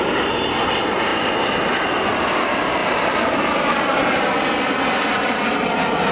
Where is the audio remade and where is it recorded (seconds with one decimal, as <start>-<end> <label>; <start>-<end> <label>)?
0.0-2.8 recorded; 2.8-4.2 remade; 4.2-6.1 recorded